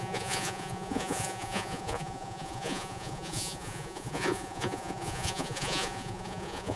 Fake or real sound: fake